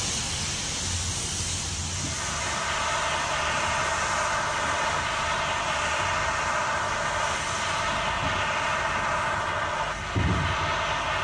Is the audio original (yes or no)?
yes